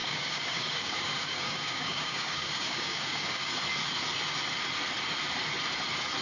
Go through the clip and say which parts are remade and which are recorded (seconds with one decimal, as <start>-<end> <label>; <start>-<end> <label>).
0.0-3.5 remade; 3.5-6.2 recorded